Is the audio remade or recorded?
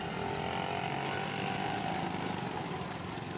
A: remade